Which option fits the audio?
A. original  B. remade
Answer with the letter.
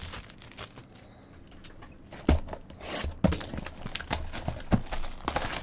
A